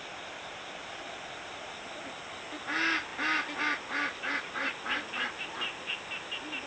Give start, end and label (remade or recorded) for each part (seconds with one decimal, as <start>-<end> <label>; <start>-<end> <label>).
0.0-6.7 recorded

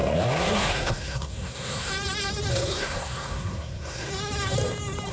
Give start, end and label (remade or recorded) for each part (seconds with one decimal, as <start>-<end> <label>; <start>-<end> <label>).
0.0-1.9 remade; 1.9-2.5 recorded; 2.5-4.1 remade; 4.1-5.1 recorded

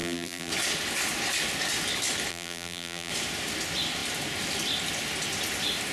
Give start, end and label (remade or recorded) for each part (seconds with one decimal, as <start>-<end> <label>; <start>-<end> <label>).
0.0-0.5 remade; 0.5-2.3 recorded; 2.3-3.1 remade; 3.1-5.9 recorded

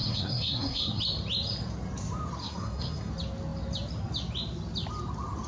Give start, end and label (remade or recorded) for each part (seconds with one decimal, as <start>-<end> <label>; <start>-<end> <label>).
0.0-1.0 remade; 1.0-2.4 recorded; 2.4-3.1 remade; 3.1-5.5 recorded

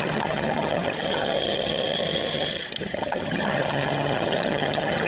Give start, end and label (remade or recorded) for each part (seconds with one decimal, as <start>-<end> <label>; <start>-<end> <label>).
0.0-5.1 remade